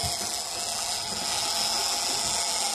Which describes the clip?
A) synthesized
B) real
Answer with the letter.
B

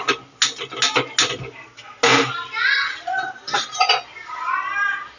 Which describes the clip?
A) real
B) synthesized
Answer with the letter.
A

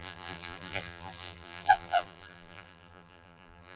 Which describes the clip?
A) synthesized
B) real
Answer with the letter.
A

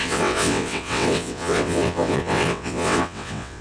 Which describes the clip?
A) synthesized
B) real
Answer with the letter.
A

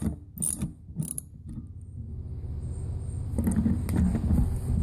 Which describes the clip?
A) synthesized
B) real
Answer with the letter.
B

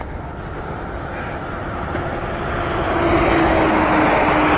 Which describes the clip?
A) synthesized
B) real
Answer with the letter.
B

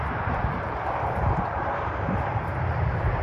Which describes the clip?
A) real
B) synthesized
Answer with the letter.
B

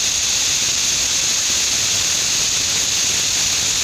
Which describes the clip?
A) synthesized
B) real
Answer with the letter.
B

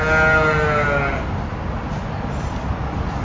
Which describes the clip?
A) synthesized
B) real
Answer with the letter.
B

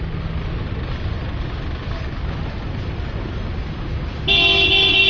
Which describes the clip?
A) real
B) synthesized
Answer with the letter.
A